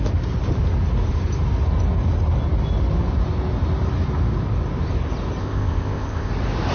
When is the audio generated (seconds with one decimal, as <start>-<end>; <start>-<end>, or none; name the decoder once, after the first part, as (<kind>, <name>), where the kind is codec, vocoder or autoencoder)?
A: 5.4-6.3 (codec, ZipCodec)